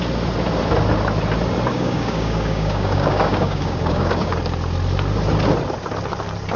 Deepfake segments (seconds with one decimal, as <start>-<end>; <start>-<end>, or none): 1.7-4.3